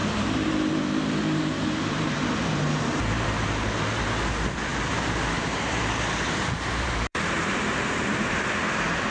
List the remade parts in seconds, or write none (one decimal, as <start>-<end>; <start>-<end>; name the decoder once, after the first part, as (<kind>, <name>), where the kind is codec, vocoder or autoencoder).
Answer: 0.0-4.0 (vocoder, BigVGAN v2); 4.7-8.4